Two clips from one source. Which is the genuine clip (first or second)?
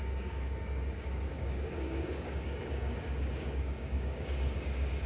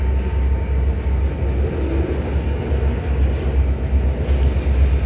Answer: second